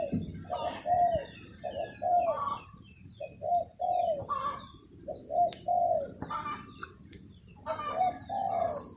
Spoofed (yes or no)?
no